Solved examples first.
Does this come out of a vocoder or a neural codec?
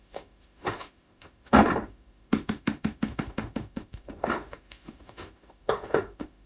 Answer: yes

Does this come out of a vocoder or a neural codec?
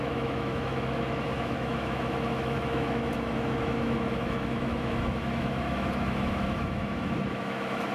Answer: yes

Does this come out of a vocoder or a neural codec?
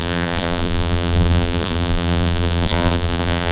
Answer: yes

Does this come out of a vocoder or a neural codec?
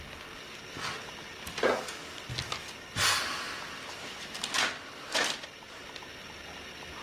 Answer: no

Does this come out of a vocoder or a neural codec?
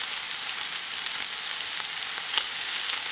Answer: no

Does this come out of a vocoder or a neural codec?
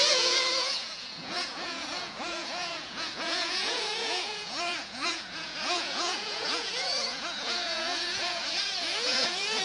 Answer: yes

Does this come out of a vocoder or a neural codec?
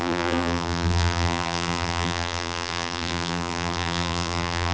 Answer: yes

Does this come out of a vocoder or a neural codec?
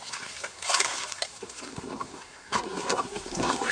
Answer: yes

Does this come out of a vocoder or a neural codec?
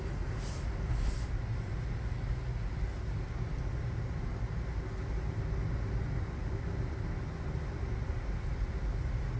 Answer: no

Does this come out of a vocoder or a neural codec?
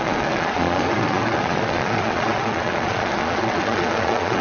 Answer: yes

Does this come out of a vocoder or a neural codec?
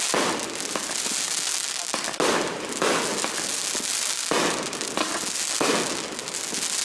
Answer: no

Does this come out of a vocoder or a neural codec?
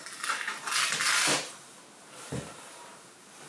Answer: no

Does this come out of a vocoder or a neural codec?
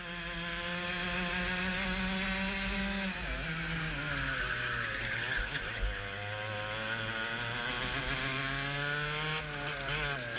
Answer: no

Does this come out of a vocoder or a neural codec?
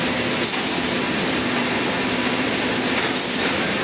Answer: no